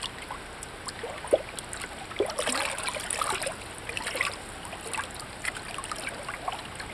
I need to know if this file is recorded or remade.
recorded